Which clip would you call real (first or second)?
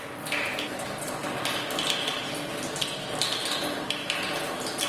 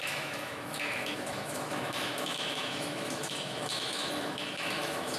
first